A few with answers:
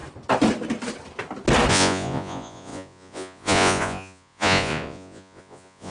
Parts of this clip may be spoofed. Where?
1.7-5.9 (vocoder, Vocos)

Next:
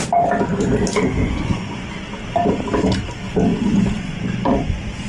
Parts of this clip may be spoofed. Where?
1.2-1.9 (vocoder, Vocos); 3.5-5.1

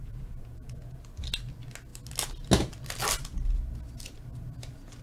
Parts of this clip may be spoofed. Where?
0.0-1.0 (vocoder, Vocos)

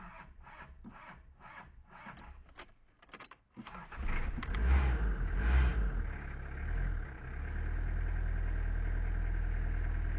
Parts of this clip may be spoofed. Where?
none